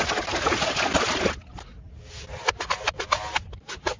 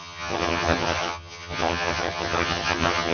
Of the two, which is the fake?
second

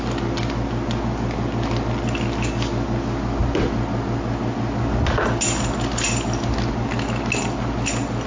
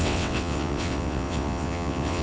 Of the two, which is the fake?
second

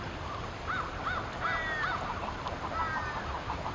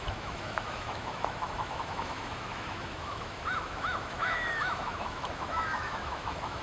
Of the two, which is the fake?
second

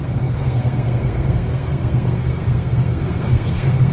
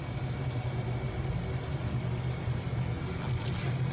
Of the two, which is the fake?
first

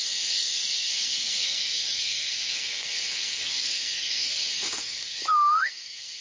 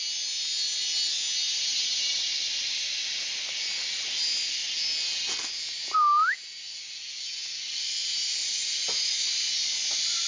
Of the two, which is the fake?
first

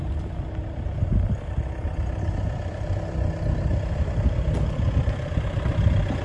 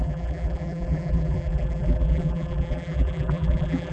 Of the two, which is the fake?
second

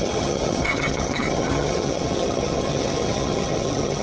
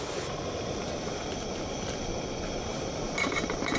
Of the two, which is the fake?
first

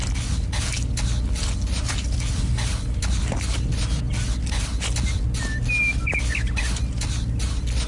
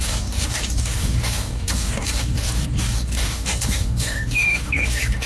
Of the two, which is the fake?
second